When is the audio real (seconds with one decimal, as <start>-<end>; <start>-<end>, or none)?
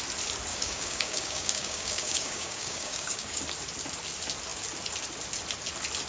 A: 0.0-0.5; 3.4-6.1